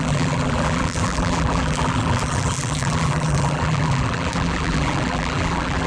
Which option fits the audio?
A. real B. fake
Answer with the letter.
B